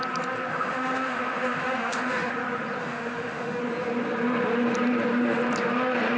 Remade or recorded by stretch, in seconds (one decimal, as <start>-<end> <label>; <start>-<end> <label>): 0.0-0.5 recorded; 0.5-2.3 remade; 2.3-2.8 recorded; 2.8-3.6 remade; 3.6-6.2 recorded